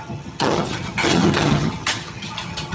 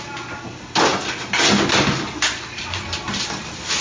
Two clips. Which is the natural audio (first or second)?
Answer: second